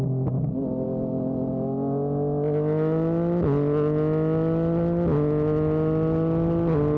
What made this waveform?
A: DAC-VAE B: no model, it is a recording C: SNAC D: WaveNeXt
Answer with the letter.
B